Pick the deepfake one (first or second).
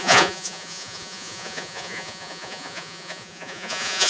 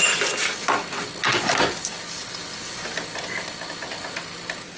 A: first